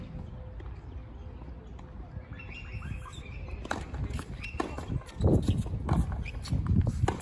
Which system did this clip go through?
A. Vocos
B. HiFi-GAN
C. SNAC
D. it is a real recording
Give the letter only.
D